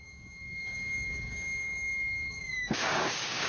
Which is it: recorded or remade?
remade